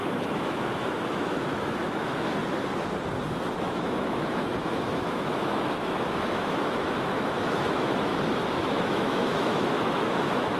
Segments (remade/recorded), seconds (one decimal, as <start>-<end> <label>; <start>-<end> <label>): 0.0-2.4 remade; 2.4-3.6 recorded; 3.6-8.1 remade; 8.1-8.6 recorded; 8.6-10.6 remade